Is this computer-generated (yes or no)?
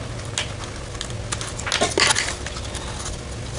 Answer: no